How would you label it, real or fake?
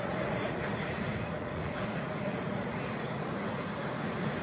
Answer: fake